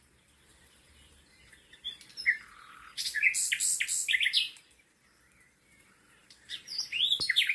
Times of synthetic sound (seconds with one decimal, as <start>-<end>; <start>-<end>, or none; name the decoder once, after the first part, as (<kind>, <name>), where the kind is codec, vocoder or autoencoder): 0.5-2.1 (vocoder, BigVGAN v2); 6.2-7.0